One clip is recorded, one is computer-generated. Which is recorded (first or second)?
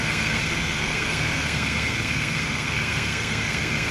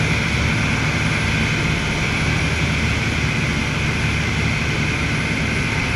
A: second